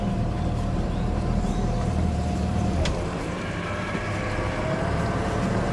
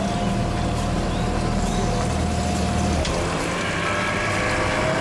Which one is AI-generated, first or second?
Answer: first